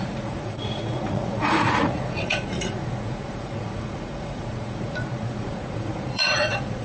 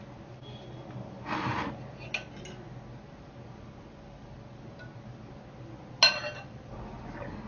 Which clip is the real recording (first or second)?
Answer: second